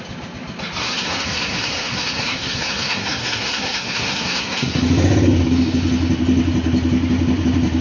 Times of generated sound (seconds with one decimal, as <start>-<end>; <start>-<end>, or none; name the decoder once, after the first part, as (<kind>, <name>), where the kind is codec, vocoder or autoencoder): 0.8-4.8 (codec, SNAC)